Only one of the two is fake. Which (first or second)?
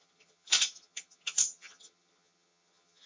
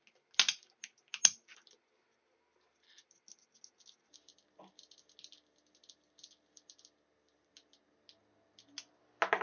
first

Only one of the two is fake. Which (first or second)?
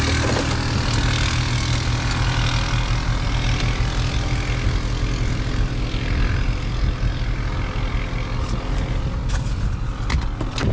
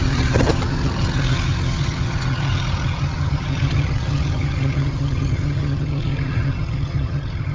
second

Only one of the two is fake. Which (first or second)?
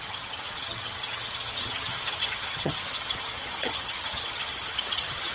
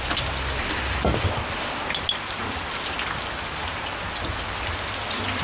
first